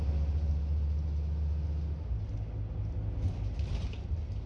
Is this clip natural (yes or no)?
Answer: yes